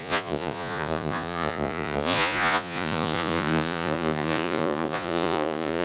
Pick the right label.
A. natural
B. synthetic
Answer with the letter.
B